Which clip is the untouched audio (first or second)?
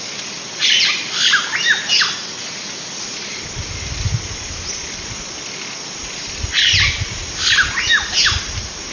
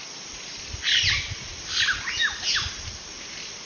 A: first